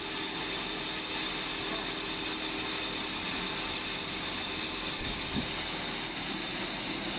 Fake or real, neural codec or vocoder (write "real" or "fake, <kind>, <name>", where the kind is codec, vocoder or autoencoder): real